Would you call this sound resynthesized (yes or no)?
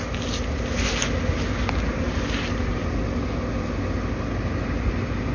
no